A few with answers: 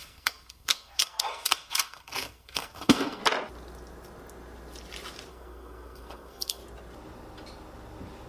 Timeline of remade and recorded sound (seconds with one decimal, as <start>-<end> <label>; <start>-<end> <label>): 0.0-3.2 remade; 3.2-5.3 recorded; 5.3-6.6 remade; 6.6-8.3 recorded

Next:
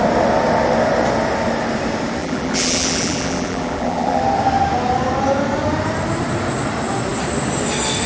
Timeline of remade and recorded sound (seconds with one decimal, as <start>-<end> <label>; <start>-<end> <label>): 0.0-2.2 recorded; 2.2-4.2 remade; 4.2-8.1 recorded

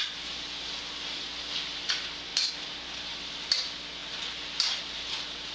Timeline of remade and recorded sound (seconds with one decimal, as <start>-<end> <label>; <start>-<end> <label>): 0.0-5.5 recorded

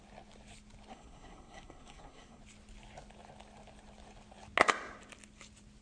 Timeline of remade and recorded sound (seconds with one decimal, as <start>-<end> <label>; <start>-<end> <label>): 0.0-0.9 recorded; 0.9-2.4 remade; 2.4-5.8 recorded

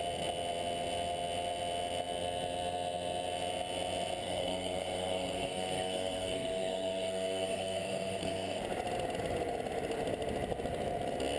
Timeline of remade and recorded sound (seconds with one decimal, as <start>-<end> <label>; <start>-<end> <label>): 0.0-4.2 recorded; 4.2-8.6 remade; 8.6-11.4 recorded